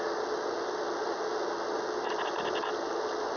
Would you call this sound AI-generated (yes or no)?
no